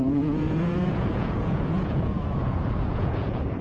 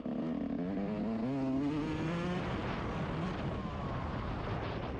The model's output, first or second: first